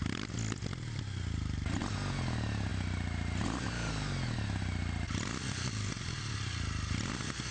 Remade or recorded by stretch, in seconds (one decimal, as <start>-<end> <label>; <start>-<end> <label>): 0.0-7.5 recorded